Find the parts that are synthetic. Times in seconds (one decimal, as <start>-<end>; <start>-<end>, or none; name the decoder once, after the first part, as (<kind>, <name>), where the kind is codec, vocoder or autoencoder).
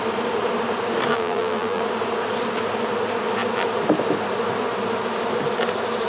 1.1-1.8 (vocoder, BigVGAN v2)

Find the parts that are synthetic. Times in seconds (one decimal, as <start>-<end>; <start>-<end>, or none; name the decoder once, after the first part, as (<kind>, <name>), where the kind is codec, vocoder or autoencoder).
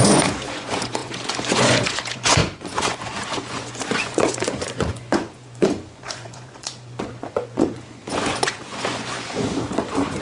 0.0-10.2 (vocoder, Vocos)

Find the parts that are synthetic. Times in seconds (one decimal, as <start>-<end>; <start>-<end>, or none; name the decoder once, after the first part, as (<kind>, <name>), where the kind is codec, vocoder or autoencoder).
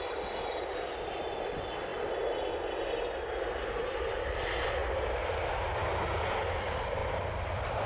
none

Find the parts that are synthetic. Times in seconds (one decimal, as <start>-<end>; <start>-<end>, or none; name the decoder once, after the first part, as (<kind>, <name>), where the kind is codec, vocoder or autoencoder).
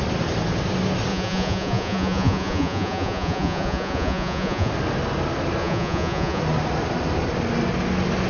1.1-4.7 (vocoder, Vocos); 5.6-6.4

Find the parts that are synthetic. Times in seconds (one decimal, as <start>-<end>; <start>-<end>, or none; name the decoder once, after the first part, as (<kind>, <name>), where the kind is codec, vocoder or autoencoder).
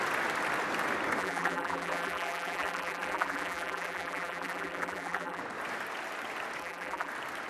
1.2-5.4 (vocoder, BigVGAN v2); 6.6-7.1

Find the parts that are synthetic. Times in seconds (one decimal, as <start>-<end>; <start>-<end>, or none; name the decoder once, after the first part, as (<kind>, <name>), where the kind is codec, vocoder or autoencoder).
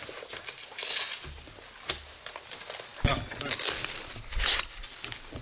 none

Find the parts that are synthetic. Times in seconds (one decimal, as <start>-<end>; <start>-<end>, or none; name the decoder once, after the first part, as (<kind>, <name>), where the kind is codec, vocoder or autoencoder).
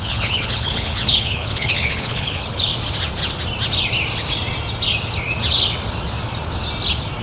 0.0-2.7 (codec, HILCodec)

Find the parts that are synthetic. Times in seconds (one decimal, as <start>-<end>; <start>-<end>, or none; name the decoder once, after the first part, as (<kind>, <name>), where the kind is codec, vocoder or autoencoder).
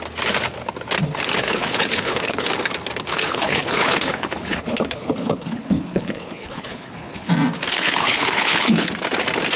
1.4-2.5 (codec, HILCodec); 3.1-7.3; 7.7-8.9